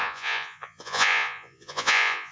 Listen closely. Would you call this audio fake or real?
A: fake